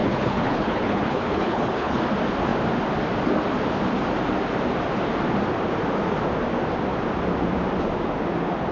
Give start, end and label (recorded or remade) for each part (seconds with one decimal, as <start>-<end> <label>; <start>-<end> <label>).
0.0-2.0 remade; 2.0-8.7 recorded